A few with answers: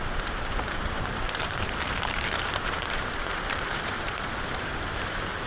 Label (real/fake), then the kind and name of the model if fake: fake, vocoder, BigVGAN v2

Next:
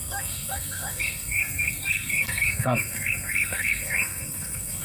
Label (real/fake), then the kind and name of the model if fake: fake, codec, SNAC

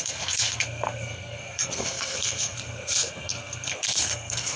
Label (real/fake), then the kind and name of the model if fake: fake, codec, SNAC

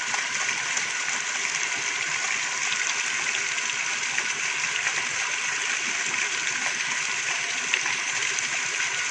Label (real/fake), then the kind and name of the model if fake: real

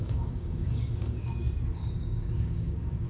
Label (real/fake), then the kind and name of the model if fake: fake, codec, DAC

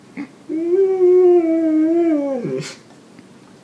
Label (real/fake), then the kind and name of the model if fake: real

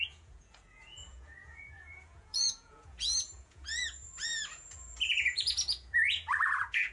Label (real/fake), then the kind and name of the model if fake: fake, vocoder, Vocos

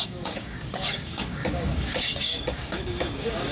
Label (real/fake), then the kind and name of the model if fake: fake, codec, DAC